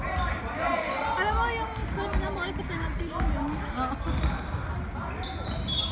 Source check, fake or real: real